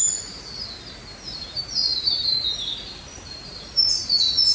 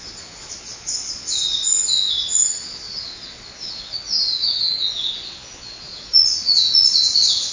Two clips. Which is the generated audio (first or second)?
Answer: second